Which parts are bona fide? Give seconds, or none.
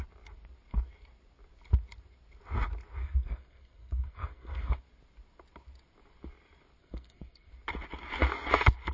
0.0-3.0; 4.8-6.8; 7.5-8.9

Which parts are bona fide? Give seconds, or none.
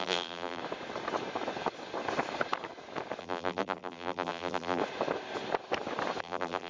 0.6-3.2; 4.8-6.2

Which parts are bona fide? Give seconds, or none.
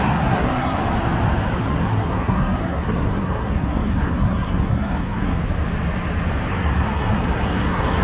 0.8-1.6; 5.4-6.5